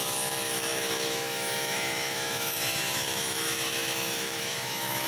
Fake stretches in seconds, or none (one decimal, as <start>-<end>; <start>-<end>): 0.0-5.1